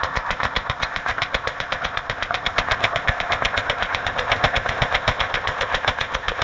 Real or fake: fake